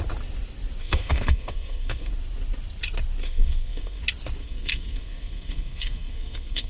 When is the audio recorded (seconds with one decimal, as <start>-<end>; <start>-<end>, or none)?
0.0-0.8; 2.1-3.2; 4.0-4.4